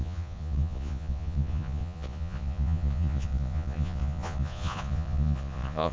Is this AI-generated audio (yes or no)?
yes